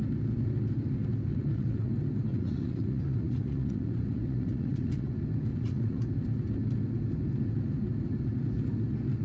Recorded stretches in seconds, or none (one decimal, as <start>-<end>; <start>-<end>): 0.0-1.3; 1.9-2.3; 5.1-5.5; 6.0-9.2